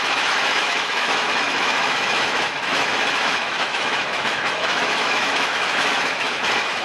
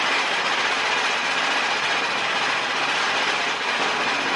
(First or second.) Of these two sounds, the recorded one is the second